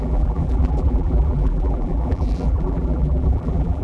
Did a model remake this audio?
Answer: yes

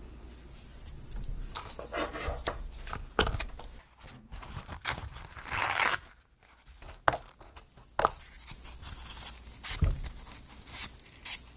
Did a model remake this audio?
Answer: no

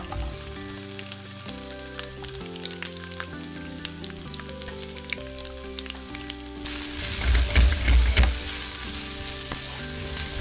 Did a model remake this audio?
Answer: no